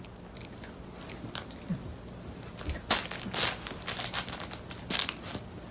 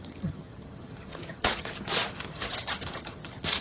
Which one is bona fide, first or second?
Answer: first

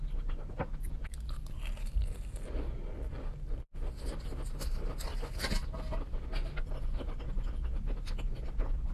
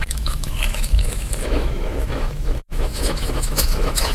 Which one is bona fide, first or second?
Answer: first